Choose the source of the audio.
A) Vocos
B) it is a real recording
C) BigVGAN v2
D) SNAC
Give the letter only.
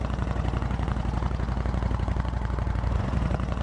A